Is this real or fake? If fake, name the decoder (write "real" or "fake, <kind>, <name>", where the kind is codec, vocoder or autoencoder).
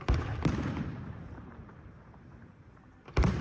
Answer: fake, vocoder, BigVGAN v2